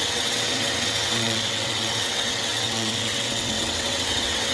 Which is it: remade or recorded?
remade